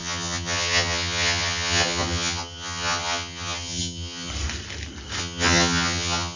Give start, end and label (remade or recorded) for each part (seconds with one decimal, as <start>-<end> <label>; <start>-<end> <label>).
0.0-4.3 remade; 4.3-5.2 recorded; 5.2-6.4 remade

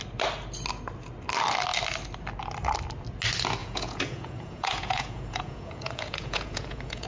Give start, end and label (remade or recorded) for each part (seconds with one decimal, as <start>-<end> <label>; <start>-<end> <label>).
0.0-3.6 recorded; 3.6-7.1 remade

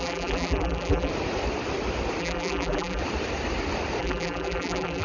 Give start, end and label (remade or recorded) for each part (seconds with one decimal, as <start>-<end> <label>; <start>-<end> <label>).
0.0-1.1 remade; 1.1-2.2 recorded; 2.2-3.0 remade; 3.0-4.0 recorded; 4.0-5.0 remade

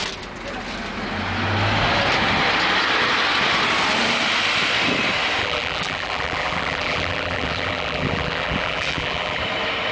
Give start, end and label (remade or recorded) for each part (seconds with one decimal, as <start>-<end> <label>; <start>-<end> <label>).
0.0-5.4 recorded; 5.4-9.4 remade; 9.4-9.9 recorded

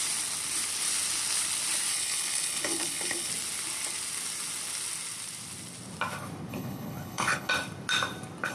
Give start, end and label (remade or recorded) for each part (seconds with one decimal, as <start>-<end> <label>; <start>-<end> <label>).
0.0-1.9 recorded; 1.9-3.3 remade; 3.3-6.5 recorded; 6.5-7.5 remade; 7.5-8.5 recorded

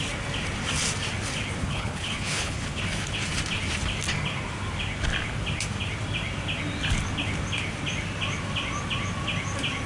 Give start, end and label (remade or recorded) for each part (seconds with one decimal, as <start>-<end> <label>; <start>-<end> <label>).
0.0-1.6 recorded; 1.6-2.8 remade; 2.8-9.9 recorded

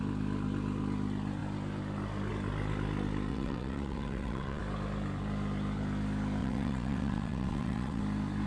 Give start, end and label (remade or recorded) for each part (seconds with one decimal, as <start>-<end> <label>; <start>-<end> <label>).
0.0-3.3 recorded; 3.3-4.6 remade; 4.6-6.4 recorded; 6.4-8.0 remade; 8.0-8.5 recorded